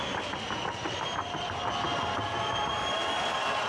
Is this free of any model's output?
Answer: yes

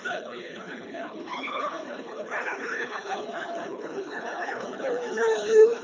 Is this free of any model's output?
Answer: no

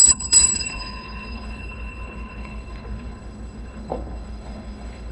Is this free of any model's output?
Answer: no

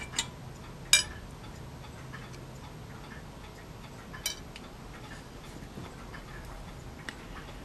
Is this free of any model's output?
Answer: yes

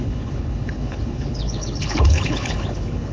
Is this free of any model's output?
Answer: no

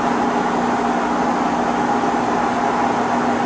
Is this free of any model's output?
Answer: yes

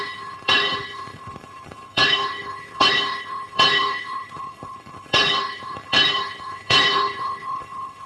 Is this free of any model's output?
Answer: no